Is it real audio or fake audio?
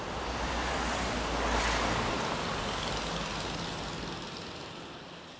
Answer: real